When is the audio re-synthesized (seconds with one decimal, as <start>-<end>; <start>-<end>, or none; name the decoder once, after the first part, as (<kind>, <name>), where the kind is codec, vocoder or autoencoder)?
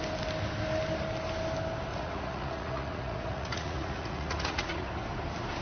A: 1.9-4.9 (vocoder, Vocos)